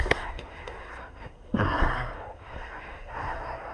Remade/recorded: remade